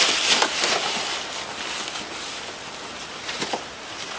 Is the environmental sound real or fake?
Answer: real